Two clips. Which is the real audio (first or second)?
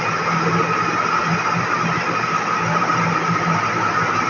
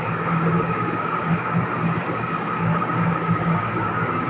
first